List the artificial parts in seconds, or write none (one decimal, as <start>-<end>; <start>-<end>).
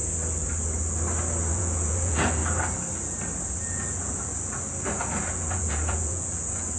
1.5-2.4; 3.7-4.3; 5.1-6.8